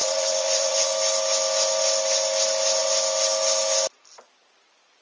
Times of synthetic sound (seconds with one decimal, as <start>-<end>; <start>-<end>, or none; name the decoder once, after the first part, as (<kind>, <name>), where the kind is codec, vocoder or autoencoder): 0.0-0.9 (vocoder, Vocos)